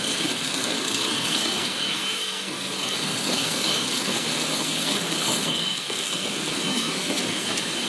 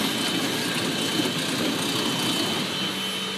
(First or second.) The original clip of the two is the second